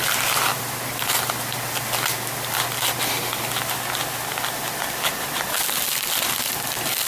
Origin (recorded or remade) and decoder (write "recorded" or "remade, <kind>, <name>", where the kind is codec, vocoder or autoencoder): recorded